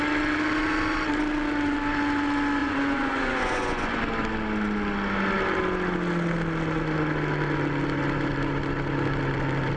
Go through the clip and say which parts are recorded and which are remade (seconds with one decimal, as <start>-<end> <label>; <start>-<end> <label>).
0.0-2.6 recorded; 2.6-4.0 remade; 4.0-9.8 recorded